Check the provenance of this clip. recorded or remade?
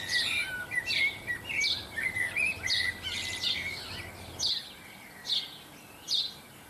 recorded